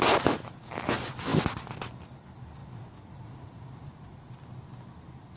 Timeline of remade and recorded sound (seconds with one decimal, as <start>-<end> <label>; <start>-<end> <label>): 0.0-2.6 recorded; 2.6-4.3 remade; 4.3-5.4 recorded